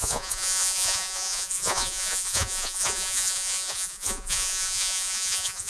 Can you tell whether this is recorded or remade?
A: remade